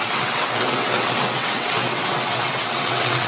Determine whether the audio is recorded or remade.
remade